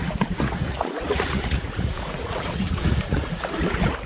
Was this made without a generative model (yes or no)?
no